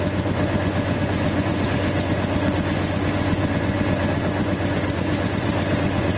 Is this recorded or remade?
remade